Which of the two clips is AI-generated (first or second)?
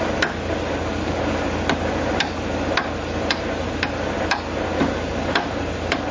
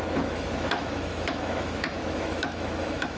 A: second